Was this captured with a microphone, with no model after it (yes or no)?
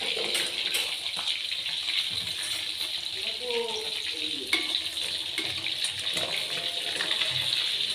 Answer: yes